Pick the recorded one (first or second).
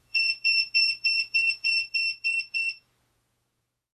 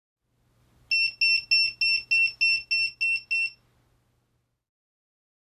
second